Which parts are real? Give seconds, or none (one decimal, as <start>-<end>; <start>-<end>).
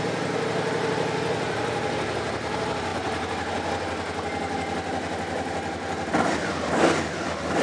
0.0-7.6